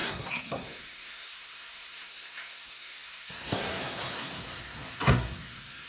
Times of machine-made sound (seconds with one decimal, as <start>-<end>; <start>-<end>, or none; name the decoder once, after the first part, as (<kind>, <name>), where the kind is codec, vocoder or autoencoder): 0.0-5.9 (codec, SNAC)